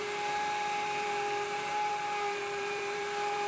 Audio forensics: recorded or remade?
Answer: remade